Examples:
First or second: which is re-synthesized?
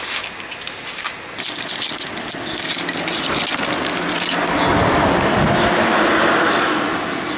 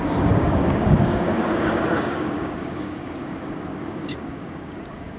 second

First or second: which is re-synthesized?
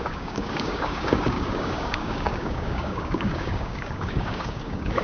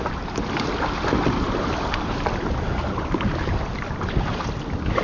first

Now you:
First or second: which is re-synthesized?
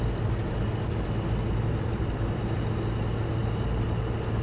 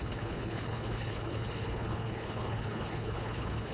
second